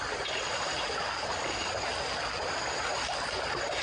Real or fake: real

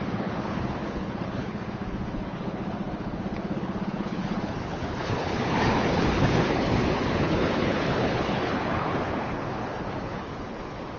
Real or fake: fake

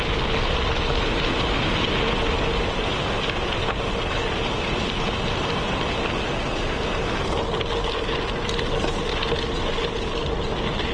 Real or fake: real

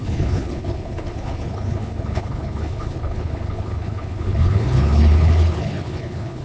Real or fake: fake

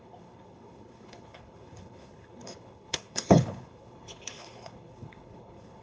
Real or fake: fake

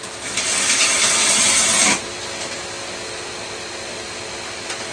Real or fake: real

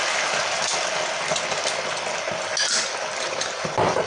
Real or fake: real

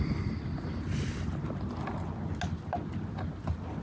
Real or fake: real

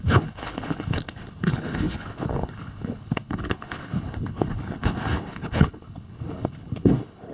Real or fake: fake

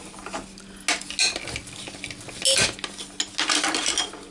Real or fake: real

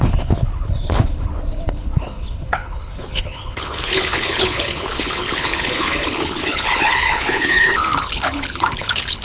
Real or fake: fake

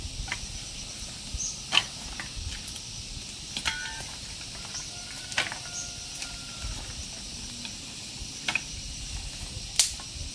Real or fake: real